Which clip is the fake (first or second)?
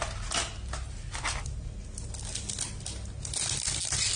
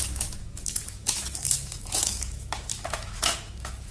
second